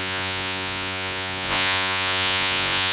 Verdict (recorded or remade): remade